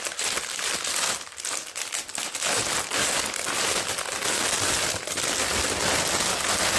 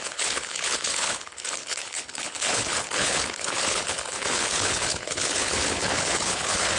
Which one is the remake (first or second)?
second